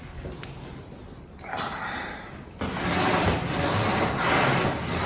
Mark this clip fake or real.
real